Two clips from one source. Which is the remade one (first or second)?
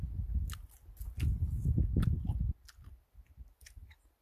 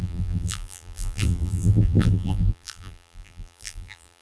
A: second